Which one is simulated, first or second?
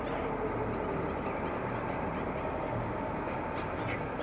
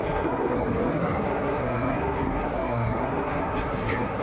second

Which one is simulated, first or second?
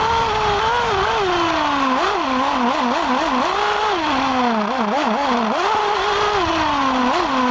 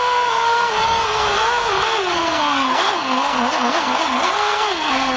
second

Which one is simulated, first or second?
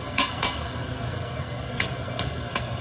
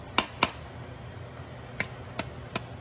first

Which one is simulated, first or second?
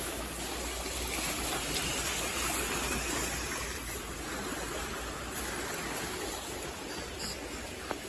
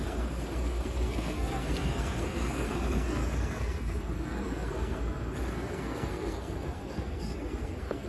second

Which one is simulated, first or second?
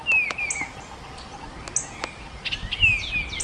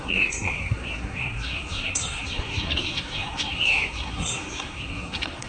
second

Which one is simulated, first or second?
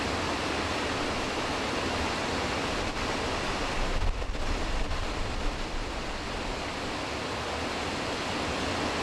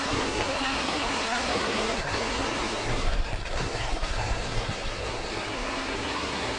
second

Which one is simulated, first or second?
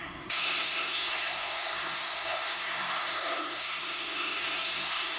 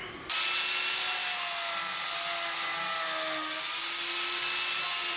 first